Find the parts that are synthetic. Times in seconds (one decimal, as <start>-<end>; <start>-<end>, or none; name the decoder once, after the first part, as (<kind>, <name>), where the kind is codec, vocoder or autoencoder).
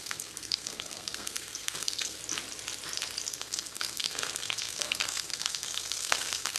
0.0-2.2 (codec, SNAC); 3.3-6.6